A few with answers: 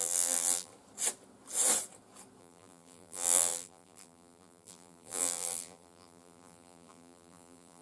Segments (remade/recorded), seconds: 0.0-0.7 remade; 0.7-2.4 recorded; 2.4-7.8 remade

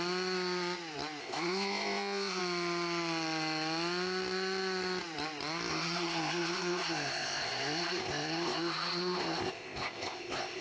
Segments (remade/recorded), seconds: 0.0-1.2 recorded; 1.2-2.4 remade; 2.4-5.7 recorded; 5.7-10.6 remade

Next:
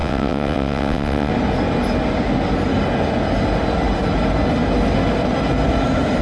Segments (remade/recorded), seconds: 0.0-1.3 remade; 1.3-6.2 recorded